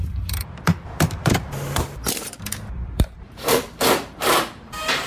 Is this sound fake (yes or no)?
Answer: yes